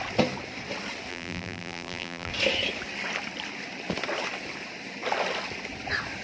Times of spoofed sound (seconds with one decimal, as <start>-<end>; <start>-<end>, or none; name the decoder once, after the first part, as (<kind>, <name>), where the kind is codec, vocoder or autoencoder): 1.1-2.3 (vocoder, BigVGAN v2)